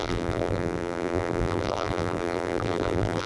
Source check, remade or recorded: remade